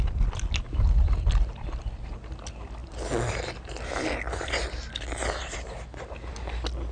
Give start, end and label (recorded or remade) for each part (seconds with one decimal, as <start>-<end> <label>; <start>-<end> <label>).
0.0-6.9 recorded